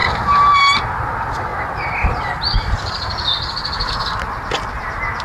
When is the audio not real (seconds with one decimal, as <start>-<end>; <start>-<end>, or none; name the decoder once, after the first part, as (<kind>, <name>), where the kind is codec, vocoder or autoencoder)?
1.5-3.9 (vocoder, BigVGAN v2)